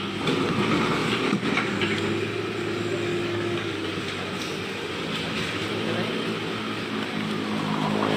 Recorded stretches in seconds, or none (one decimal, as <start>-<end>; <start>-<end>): 0.0-3.1; 4.0-8.2